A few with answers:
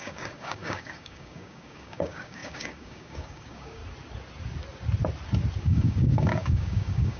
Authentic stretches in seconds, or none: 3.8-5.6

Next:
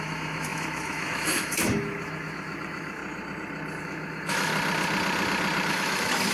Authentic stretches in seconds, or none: 3.0-3.8; 4.5-5.7

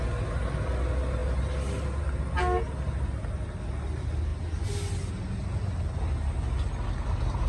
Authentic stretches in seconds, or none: 0.0-7.5